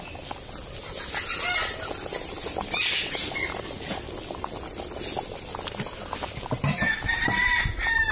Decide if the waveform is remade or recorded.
recorded